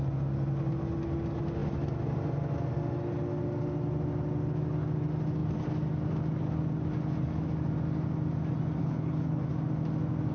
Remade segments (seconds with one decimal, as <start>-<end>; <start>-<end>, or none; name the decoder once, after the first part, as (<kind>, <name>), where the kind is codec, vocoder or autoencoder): 8.8-9.5 (codec, HILCodec)